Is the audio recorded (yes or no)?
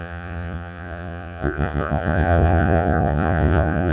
no